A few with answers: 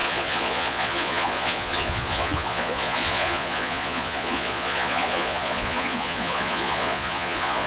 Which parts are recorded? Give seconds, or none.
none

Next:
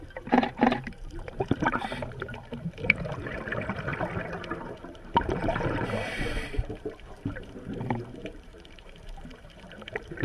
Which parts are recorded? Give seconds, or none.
3.9-4.5

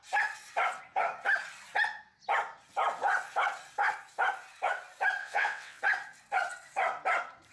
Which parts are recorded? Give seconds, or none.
0.0-5.2; 5.8-7.5

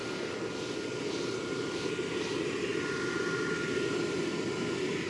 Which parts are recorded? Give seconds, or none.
0.0-5.1

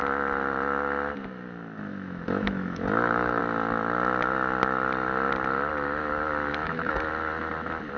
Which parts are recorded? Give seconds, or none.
0.0-1.9; 3.4-6.5; 7.1-8.0

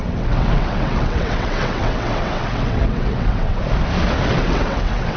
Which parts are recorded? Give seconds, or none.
3.6-4.3

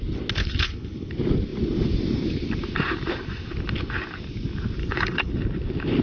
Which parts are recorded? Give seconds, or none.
0.0-0.4; 1.1-4.8; 5.3-6.0

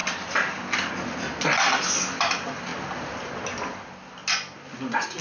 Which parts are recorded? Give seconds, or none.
0.0-5.2